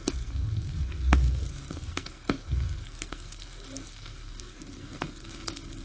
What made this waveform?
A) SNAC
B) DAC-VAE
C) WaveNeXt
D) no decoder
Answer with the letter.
A